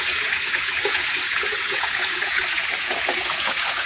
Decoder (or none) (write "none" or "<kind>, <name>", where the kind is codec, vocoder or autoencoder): vocoder, Vocos